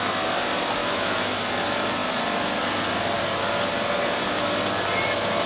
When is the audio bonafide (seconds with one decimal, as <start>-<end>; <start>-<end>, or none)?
0.0-0.8; 1.4-5.5

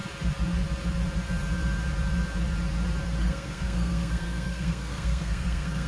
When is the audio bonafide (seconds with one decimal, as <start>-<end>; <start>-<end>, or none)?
0.0-3.2

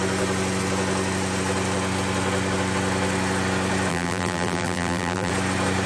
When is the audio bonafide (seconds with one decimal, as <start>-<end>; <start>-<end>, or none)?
0.0-3.9; 5.3-5.9

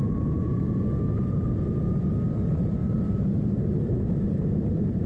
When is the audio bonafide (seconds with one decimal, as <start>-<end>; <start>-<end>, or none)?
0.0-2.8